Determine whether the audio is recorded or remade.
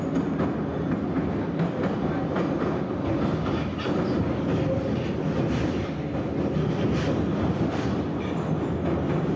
recorded